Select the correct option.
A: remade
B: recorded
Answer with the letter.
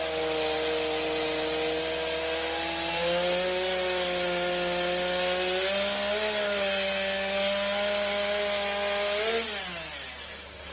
B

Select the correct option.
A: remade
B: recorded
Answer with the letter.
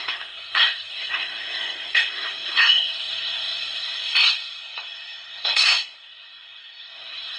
A